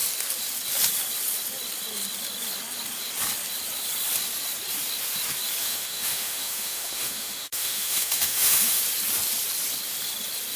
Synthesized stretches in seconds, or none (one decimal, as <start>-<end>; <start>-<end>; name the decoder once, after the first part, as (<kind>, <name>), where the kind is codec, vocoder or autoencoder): 5.6-8.8 (autoencoder, DAC-VAE)